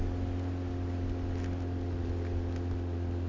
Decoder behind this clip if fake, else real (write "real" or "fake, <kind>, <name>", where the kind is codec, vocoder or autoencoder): real